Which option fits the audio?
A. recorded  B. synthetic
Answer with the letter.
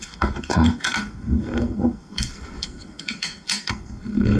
B